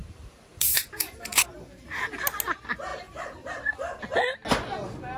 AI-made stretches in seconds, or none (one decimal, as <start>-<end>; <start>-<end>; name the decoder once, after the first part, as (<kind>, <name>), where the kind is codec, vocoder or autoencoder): 0.0-2.0 (vocoder, BigVGAN v2); 2.9-4.0